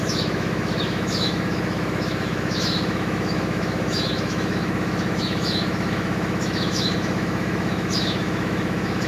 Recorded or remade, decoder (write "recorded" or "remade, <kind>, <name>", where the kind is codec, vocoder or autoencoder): remade, autoencoder, DAC-VAE